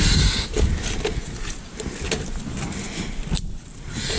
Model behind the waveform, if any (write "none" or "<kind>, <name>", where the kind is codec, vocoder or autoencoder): none